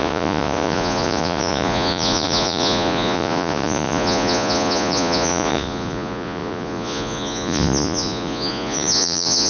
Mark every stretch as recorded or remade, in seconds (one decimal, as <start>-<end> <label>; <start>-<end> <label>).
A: 0.0-9.5 remade